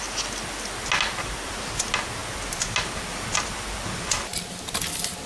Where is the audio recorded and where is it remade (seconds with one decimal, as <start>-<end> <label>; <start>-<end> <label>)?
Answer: 0.0-5.3 recorded